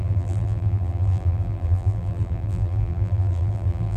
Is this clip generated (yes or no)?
yes